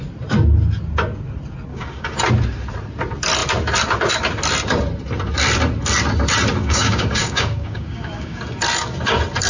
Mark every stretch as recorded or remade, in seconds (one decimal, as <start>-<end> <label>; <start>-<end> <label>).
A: 0.0-1.7 recorded; 1.7-2.2 remade; 2.2-6.6 recorded; 6.6-8.4 remade; 8.4-9.5 recorded